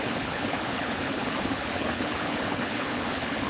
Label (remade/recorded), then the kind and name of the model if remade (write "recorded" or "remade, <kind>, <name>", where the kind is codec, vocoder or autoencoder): remade, codec, HILCodec